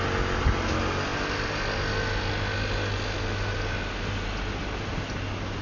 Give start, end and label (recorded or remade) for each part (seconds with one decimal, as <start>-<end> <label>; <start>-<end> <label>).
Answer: 0.0-5.6 recorded